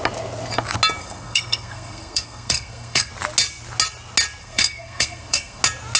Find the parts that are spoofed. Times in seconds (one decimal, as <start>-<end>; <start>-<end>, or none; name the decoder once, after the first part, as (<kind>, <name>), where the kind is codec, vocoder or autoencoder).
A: 1.0-3.1 (codec, SNAC); 4.4-5.6